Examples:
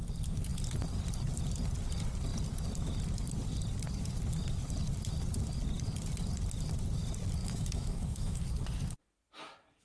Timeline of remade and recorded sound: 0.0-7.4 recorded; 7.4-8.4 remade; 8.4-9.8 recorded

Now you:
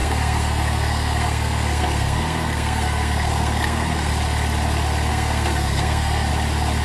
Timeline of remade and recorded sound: 0.0-4.1 remade; 4.1-5.1 recorded; 5.1-6.3 remade; 6.3-6.8 recorded

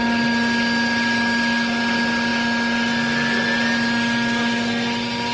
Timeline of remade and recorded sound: 0.0-5.3 recorded

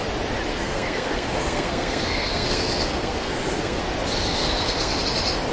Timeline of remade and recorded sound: 0.0-0.5 recorded; 0.5-3.8 remade; 3.8-4.2 recorded; 4.2-5.0 remade; 5.0-5.5 recorded

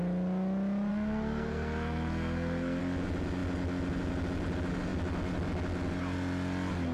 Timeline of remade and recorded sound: 0.0-0.9 recorded; 0.9-2.8 remade; 2.8-6.9 recorded